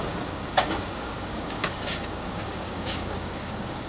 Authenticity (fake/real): fake